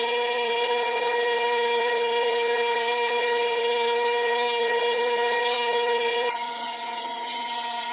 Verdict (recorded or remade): remade